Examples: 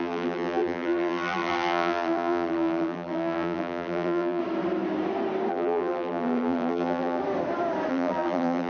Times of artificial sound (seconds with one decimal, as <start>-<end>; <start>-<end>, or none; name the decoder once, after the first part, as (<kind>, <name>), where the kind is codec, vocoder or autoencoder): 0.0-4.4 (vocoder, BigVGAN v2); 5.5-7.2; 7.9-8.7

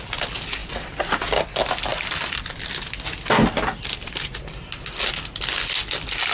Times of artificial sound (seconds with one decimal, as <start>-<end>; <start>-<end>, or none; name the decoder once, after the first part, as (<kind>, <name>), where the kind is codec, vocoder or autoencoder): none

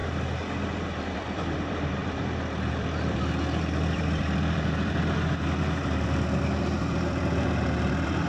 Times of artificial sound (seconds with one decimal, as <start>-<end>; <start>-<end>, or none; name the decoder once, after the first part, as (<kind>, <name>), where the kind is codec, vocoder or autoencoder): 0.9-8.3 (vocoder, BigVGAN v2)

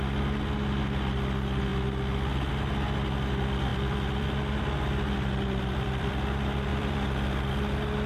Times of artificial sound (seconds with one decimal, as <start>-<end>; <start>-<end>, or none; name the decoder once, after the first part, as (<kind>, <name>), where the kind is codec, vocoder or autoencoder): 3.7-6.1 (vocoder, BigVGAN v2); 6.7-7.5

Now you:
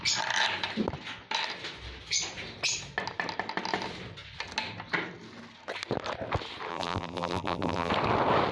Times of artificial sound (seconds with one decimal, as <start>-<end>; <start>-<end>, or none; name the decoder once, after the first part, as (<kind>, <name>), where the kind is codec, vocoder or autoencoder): 6.7-7.9 (vocoder, BigVGAN v2)

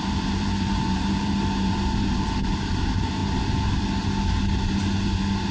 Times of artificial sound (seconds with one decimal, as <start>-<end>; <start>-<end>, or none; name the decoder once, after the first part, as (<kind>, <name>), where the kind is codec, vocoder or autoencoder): 0.0-3.2 (vocoder, BigVGAN v2)